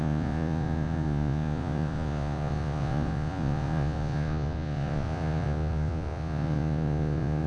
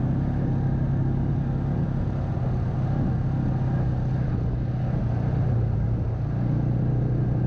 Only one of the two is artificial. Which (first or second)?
first